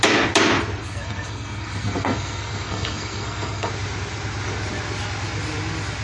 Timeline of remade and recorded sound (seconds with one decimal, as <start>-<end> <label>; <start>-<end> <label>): 0.0-0.8 recorded; 0.8-3.7 remade; 3.7-6.0 recorded